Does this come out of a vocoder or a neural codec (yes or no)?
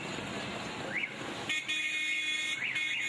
no